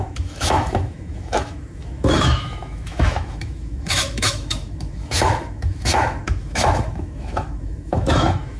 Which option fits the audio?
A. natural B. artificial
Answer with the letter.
B